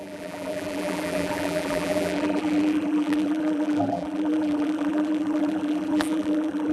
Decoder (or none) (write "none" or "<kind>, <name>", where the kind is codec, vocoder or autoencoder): vocoder, BigVGAN v2